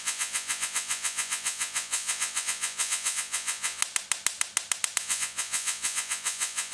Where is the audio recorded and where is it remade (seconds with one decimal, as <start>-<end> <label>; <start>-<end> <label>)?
0.0-3.8 remade; 3.8-5.0 recorded; 5.0-6.7 remade